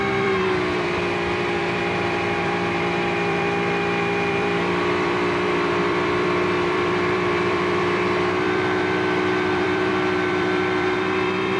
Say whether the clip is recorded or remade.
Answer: remade